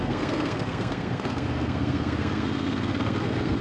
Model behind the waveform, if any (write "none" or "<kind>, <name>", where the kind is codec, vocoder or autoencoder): codec, SNAC